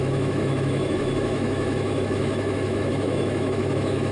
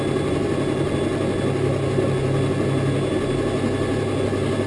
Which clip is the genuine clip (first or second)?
second